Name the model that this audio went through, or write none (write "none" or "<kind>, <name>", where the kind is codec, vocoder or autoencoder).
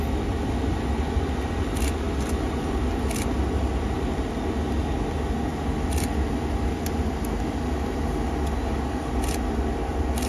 none